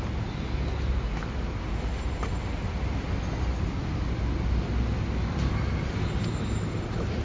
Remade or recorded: recorded